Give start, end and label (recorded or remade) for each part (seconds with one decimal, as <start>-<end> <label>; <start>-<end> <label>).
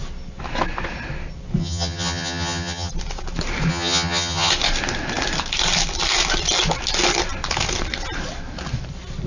0.0-1.6 recorded; 1.6-2.9 remade; 2.9-3.7 recorded; 3.7-4.5 remade; 4.5-9.3 recorded